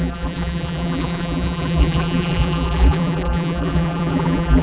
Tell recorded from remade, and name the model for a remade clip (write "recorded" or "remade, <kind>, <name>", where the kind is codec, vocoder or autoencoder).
remade, vocoder, BigVGAN v2